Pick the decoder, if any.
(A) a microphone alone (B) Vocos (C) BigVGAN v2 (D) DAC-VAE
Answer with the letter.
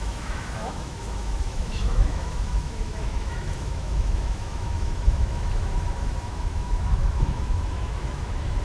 D